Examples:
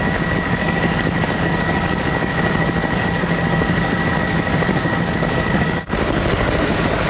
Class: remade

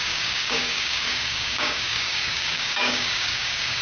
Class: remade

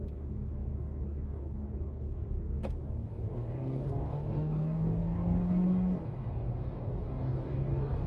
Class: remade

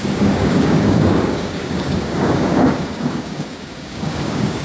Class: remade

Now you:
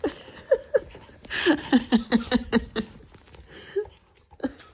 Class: recorded